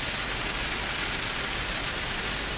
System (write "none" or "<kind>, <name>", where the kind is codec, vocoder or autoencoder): none